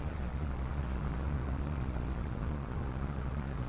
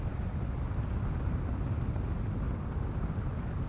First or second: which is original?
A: second